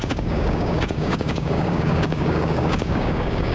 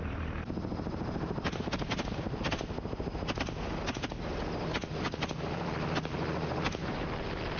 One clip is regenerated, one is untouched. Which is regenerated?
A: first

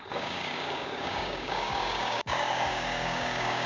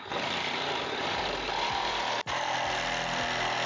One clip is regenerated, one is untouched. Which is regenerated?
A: first